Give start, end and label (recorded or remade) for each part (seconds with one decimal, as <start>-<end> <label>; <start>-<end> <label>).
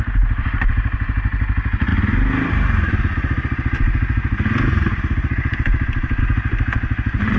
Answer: 0.0-7.4 recorded